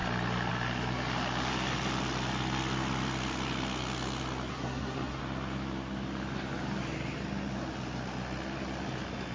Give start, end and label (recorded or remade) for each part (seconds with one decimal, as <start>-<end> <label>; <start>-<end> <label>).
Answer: 0.0-4.5 recorded; 4.5-5.2 remade; 5.2-9.3 recorded